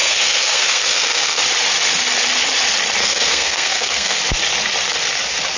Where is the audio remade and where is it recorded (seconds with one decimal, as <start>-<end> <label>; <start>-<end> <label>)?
0.0-1.4 remade; 1.4-3.0 recorded; 3.0-4.2 remade; 4.2-5.6 recorded